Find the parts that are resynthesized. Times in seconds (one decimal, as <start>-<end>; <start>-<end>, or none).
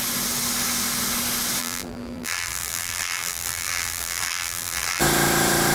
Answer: 1.6-5.0